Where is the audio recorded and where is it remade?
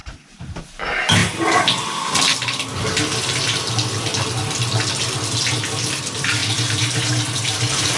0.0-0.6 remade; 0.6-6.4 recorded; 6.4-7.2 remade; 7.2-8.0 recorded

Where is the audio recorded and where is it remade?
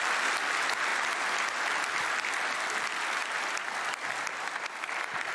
0.0-5.3 recorded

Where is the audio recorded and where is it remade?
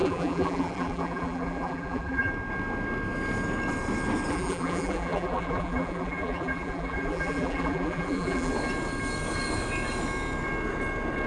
0.0-2.3 remade; 2.3-4.3 recorded; 4.3-8.5 remade; 8.5-11.3 recorded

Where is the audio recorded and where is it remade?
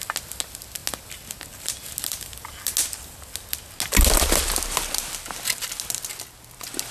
0.0-6.9 recorded